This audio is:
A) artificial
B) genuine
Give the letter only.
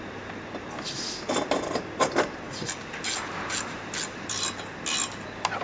B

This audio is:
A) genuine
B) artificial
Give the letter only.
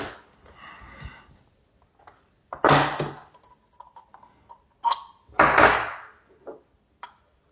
A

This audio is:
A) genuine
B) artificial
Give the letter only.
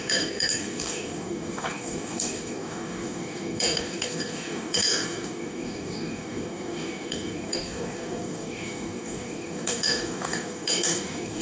B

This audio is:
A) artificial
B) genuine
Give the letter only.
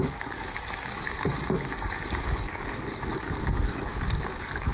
A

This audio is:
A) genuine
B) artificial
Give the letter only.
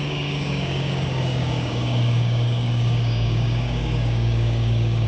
B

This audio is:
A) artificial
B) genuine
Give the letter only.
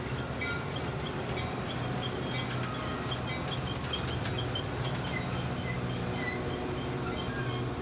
B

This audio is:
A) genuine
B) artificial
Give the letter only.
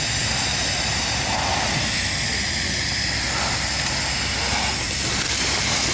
A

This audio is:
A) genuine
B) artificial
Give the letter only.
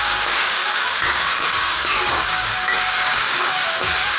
B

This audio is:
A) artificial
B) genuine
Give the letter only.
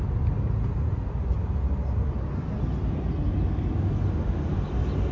B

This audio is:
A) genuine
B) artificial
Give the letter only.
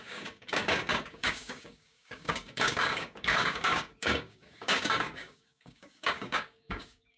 B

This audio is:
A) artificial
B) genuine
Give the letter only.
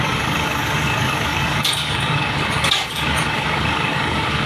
A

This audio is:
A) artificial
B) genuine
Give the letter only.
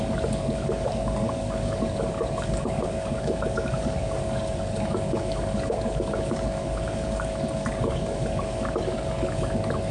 A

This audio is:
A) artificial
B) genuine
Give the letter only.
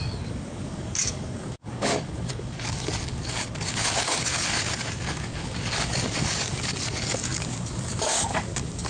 A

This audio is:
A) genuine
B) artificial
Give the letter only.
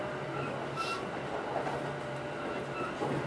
A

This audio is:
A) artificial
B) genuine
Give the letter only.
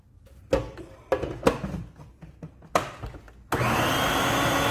B